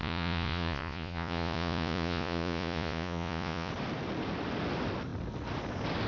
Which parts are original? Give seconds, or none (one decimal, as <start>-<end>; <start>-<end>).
3.7-6.1